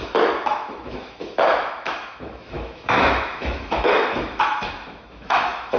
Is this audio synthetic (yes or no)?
yes